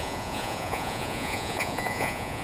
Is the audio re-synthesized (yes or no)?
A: yes